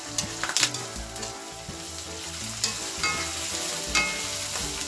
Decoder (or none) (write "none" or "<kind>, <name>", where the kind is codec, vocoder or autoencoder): none